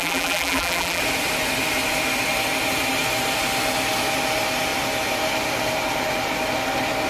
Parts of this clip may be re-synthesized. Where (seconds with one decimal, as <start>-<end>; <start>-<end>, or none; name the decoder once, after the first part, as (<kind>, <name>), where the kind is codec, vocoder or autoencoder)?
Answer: 0.0-1.0 (vocoder, BigVGAN v2)